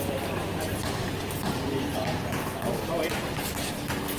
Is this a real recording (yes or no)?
yes